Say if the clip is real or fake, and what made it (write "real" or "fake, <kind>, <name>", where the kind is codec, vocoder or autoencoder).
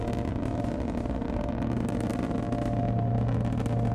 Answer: real